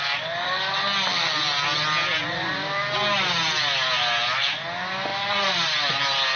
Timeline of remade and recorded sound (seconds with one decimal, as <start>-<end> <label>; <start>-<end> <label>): 0.0-6.4 recorded